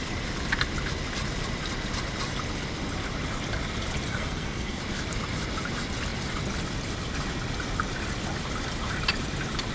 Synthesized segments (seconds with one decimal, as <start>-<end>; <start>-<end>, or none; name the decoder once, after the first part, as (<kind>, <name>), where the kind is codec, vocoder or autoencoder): 4.1-4.8 (codec, SNAC)